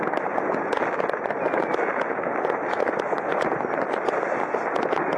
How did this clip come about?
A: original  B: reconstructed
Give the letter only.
A